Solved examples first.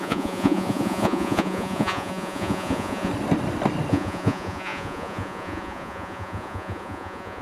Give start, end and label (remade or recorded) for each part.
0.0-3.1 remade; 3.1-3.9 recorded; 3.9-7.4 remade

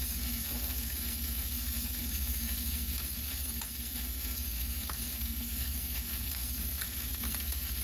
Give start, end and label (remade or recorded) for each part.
0.0-7.8 remade

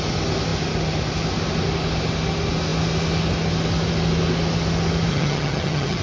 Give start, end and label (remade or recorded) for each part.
0.0-5.1 recorded; 5.1-6.0 remade

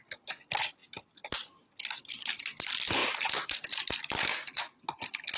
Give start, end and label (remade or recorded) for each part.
0.0-3.0 recorded; 3.0-4.3 remade; 4.3-5.4 recorded

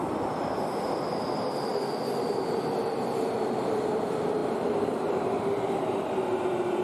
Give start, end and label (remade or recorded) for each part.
0.0-6.8 recorded

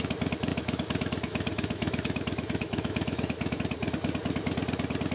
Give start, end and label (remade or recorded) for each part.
0.0-0.5 recorded; 0.5-3.6 remade; 3.6-5.1 recorded

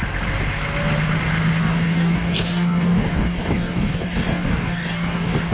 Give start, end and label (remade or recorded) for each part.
0.0-1.6 recorded; 1.6-5.5 remade